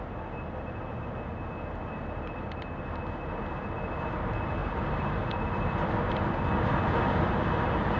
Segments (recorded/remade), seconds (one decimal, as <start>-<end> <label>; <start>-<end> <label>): 0.0-4.6 recorded; 4.6-5.3 remade; 5.3-8.0 recorded